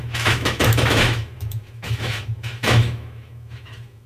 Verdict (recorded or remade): remade